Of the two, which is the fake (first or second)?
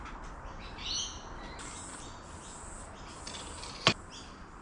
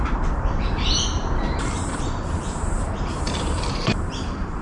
second